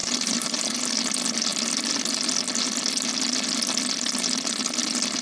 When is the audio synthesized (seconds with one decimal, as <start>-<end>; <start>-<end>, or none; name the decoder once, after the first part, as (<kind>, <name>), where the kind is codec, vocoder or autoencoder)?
0.0-0.8 (vocoder, BigVGAN v2)